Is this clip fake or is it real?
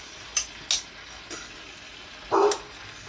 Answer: real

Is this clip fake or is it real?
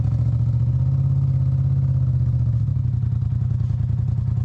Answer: real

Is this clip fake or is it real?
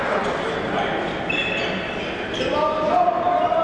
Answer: real